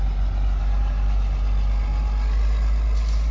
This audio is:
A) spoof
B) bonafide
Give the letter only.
B